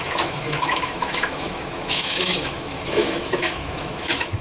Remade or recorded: remade